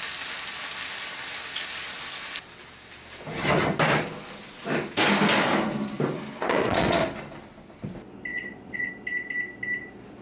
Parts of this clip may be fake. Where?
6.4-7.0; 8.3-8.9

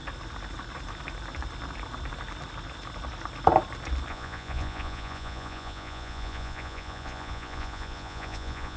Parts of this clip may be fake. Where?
4.1-8.8

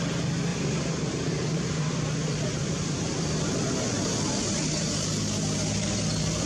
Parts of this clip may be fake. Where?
0.5-3.4

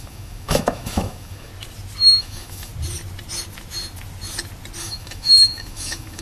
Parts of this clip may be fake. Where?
0.0-1.5; 2.2-2.7; 4.8-6.2

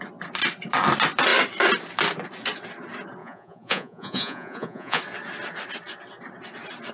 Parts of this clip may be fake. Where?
3.2-5.0

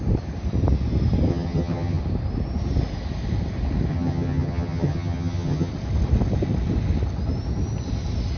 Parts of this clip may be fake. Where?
1.3-2.0; 3.9-5.7

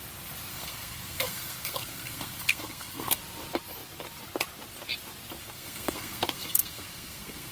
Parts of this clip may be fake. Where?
0.5-3.2; 5.4-7.5

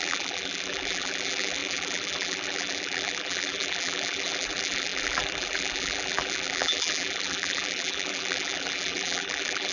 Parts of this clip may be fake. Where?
0.0-9.7